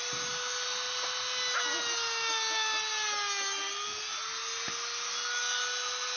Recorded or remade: recorded